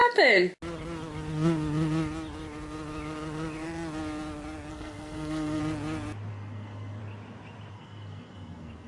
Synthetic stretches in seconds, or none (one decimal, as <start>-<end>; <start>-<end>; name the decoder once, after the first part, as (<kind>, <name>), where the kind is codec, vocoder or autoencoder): 4.7-5.6 (codec, SNAC); 6.3-7.0; 7.7-8.9